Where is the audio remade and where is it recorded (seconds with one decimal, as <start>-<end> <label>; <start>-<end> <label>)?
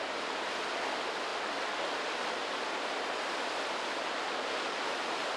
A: 0.0-5.4 recorded